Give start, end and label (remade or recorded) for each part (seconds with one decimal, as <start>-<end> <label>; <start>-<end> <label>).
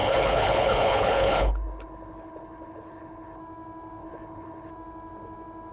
0.0-3.4 remade; 3.4-4.0 recorded; 4.0-4.7 remade; 4.7-5.7 recorded